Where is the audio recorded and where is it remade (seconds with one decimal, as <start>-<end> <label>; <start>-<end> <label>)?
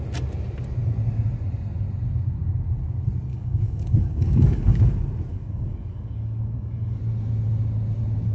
0.0-3.3 recorded; 3.3-4.8 remade; 4.8-5.3 recorded; 5.3-7.0 remade; 7.0-8.3 recorded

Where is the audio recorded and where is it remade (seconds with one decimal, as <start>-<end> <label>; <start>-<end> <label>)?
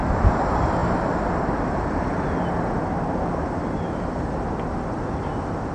0.0-5.7 recorded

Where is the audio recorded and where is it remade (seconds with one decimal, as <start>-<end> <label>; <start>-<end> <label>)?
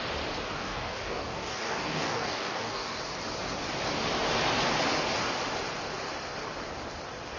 0.0-0.5 recorded; 0.5-3.0 remade; 3.0-7.4 recorded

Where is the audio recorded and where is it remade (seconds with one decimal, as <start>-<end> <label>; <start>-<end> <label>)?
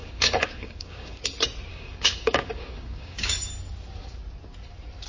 0.0-1.2 remade; 1.2-1.7 recorded; 1.7-3.5 remade; 3.5-5.1 recorded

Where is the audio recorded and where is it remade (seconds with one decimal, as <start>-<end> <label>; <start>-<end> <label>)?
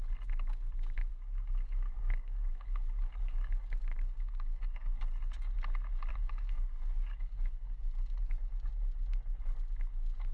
0.0-1.1 recorded; 1.1-5.0 remade; 5.0-6.1 recorded; 6.1-8.7 remade; 8.7-10.3 recorded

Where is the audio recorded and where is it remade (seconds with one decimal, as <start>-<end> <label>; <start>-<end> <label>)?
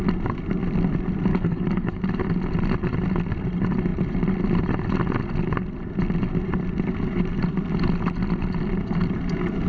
0.0-1.3 recorded; 1.3-2.0 remade; 2.0-9.7 recorded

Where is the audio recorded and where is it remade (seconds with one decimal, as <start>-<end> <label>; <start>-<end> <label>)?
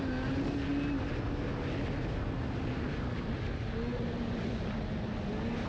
0.0-5.7 recorded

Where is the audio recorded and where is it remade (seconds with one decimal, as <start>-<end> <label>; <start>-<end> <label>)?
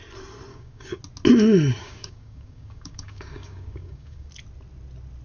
0.0-0.5 recorded; 0.5-1.0 remade; 1.0-1.8 recorded; 1.8-4.3 remade; 4.3-5.2 recorded